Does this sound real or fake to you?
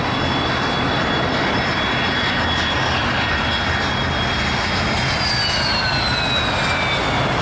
real